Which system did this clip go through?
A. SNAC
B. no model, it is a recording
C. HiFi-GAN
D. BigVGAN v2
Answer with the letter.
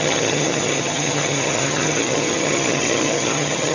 C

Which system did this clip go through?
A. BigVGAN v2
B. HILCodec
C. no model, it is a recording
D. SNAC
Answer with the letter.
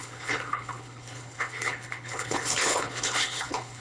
B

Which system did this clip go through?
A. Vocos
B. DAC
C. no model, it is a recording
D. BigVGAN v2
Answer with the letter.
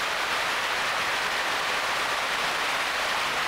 C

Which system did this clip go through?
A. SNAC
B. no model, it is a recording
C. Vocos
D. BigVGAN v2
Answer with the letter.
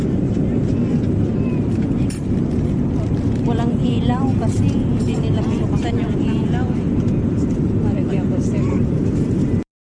D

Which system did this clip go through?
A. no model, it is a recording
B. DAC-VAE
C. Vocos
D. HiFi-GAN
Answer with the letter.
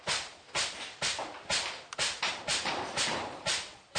A